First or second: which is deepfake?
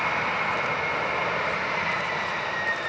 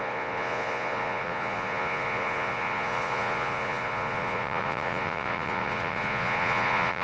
second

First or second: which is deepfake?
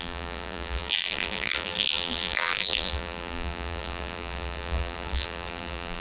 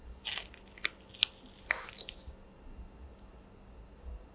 first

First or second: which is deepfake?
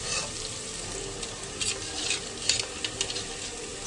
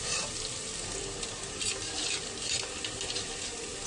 second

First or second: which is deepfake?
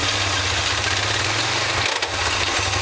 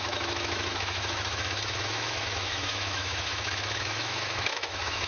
second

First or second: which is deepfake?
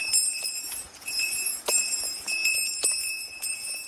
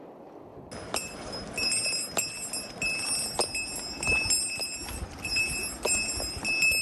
first